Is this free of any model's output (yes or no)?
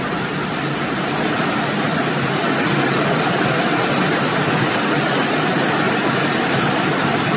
yes